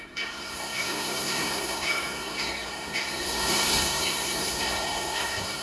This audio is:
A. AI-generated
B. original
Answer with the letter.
A